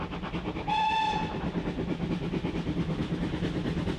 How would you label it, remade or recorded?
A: recorded